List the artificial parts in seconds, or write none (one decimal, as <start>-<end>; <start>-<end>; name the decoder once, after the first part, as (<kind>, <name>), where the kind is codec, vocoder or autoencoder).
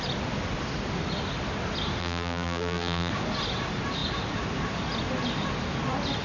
2.0-3.1 (vocoder, BigVGAN v2)